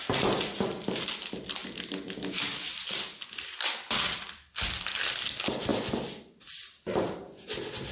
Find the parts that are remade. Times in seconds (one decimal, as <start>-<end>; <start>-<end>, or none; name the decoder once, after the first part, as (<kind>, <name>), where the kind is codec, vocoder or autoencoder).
none